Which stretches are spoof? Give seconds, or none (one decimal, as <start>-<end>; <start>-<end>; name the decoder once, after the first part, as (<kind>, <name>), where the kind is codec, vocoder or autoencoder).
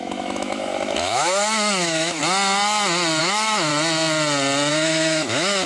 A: 0.0-2.2 (autoencoder, DAC-VAE); 3.2-3.7; 4.7-5.7